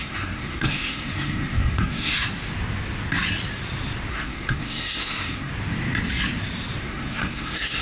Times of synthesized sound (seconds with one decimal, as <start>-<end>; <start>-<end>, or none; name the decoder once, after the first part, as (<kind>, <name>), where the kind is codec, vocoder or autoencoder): 0.0-2.1 (codec, SNAC); 4.1-5.5; 6.8-7.8